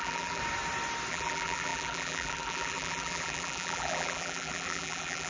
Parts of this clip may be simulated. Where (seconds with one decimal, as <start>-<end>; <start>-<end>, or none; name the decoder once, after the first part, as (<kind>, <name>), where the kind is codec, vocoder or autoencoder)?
0.0-0.4 (vocoder, BigVGAN v2); 1.1-5.3